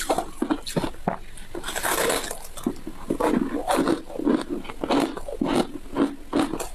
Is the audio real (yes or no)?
yes